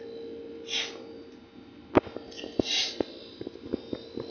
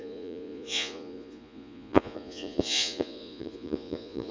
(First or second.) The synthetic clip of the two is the second